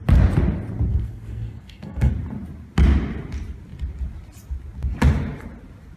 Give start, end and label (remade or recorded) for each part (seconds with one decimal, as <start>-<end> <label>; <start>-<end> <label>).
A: 0.0-0.9 recorded; 0.9-2.1 remade; 2.1-6.0 recorded